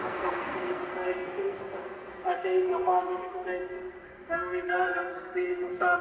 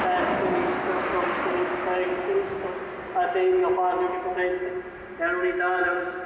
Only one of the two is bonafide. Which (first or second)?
second